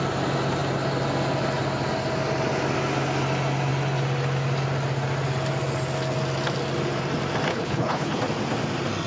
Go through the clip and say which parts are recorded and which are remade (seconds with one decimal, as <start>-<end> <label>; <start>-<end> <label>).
0.0-7.5 recorded; 7.5-8.2 remade; 8.2-9.1 recorded